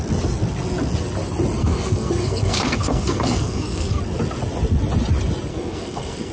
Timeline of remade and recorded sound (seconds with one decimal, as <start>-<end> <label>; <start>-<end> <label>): 0.0-1.6 recorded; 1.6-4.0 remade; 4.0-5.5 recorded; 5.5-6.3 remade